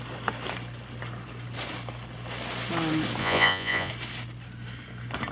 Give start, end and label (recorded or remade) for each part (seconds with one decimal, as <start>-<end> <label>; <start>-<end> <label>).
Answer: 0.0-3.2 recorded; 3.2-3.9 remade; 3.9-5.3 recorded